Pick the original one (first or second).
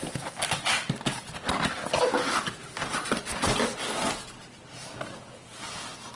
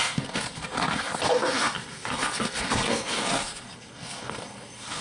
first